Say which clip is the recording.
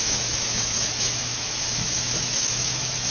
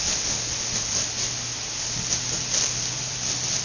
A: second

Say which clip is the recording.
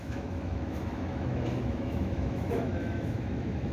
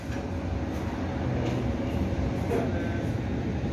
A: second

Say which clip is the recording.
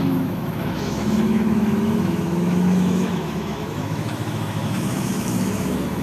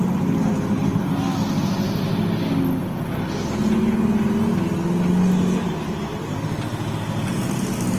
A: second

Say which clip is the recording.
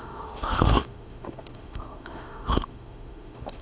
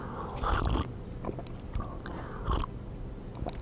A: second